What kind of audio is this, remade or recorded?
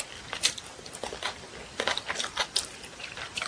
remade